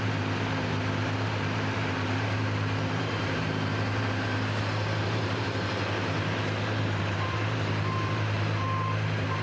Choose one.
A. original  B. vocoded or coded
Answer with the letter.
B